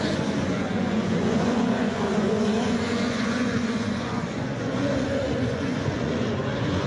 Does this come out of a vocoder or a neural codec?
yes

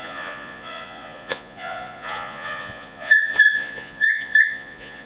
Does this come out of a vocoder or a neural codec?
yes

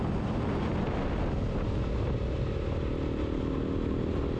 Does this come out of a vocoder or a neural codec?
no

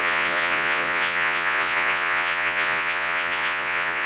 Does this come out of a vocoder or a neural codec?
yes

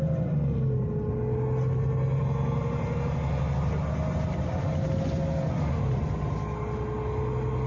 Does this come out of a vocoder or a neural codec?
no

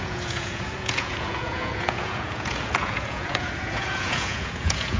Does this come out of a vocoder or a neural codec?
yes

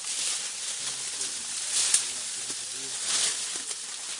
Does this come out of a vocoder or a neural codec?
no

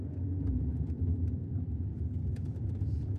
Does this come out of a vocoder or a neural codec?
yes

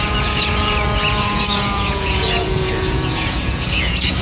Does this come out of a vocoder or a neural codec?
yes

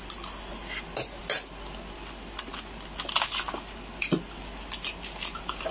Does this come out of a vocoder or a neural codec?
no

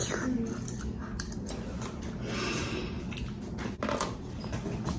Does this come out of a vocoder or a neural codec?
no